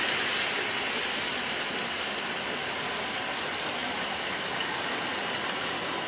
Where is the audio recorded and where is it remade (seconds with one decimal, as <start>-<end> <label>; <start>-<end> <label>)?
0.0-6.1 recorded